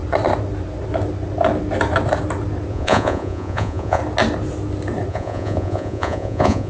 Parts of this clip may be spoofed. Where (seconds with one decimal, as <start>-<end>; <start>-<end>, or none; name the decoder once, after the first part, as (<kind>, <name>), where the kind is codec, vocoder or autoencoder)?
2.7-4.0 (vocoder, Vocos); 5.1-6.7